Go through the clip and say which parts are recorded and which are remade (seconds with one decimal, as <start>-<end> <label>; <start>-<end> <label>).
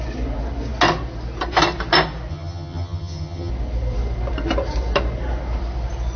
0.0-2.3 recorded; 2.3-3.5 remade; 3.5-6.2 recorded